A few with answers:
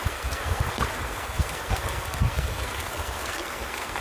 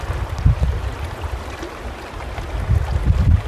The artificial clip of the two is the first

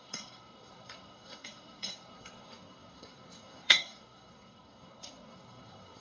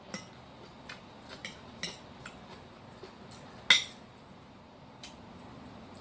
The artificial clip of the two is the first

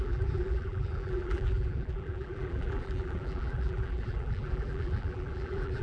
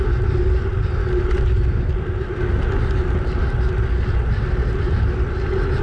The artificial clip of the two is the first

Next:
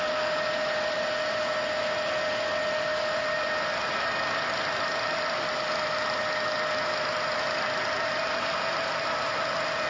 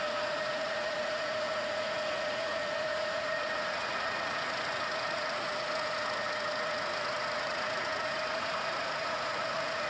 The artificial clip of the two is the second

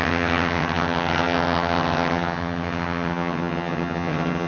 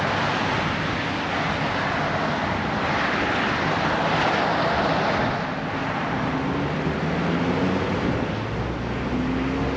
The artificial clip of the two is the first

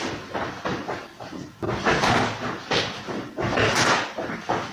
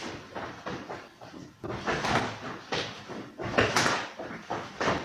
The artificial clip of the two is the second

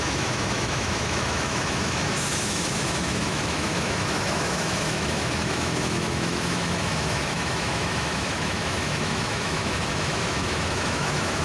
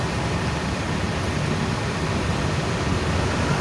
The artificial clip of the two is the first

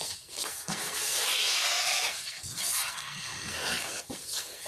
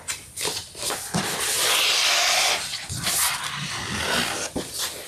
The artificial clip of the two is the first